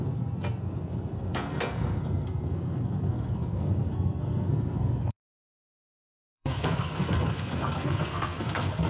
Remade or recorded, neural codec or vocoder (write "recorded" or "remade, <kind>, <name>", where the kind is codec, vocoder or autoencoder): remade, codec, SNAC